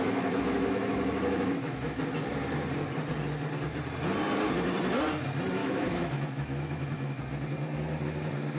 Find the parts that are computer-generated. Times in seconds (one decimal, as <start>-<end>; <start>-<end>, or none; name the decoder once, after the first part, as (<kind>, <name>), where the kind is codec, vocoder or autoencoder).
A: 0.0-2.0 (autoencoder, DAC-VAE); 5.6-7.2